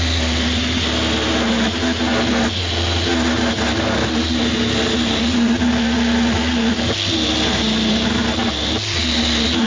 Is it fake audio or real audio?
real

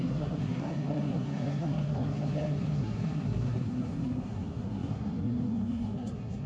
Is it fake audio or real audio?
fake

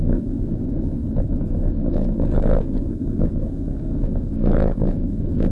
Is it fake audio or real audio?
fake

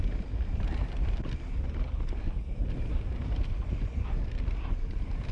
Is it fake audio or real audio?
real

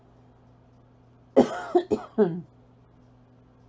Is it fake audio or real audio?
real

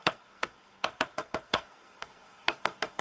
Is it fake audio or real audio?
fake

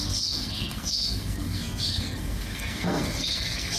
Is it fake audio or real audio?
fake